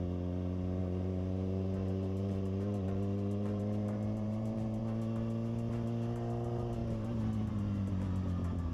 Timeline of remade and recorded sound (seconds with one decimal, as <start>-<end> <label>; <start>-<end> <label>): 0.0-0.8 recorded; 0.8-4.8 remade; 4.8-6.8 recorded; 6.8-7.5 remade; 7.5-8.7 recorded